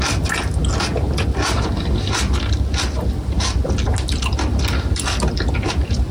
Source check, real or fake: real